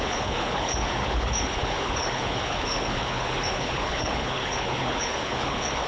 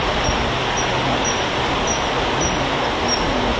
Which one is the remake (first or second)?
first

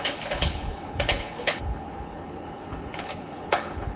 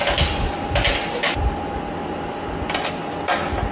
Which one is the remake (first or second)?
first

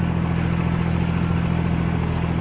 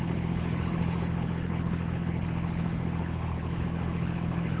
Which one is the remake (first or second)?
second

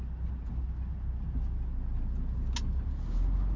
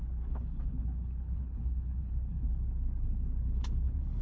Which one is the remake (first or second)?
second